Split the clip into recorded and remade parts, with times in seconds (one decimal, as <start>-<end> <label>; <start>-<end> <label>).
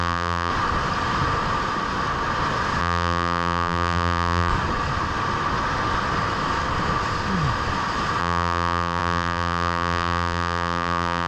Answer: 0.0-0.5 remade; 0.5-2.8 recorded; 2.8-4.5 remade; 4.5-8.2 recorded; 8.2-11.3 remade